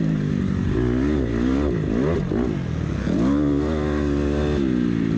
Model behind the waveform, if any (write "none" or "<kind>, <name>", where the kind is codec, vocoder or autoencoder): none